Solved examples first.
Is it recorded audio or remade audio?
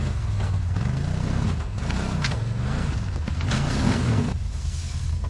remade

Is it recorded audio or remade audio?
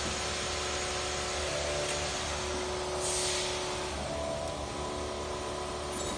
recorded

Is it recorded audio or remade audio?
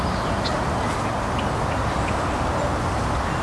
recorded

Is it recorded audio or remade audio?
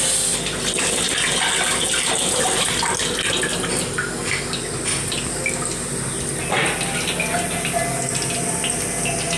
recorded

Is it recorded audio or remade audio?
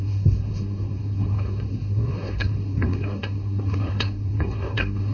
remade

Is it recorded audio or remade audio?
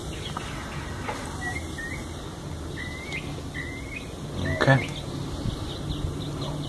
recorded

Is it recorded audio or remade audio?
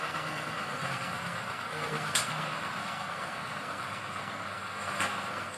remade